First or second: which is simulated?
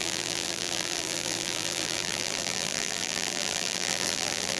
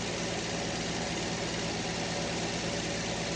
first